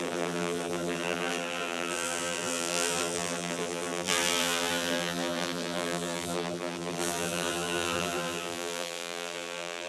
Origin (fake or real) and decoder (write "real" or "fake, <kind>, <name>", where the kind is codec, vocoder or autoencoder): fake, vocoder, BigVGAN v2